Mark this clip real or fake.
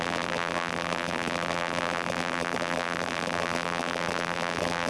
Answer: fake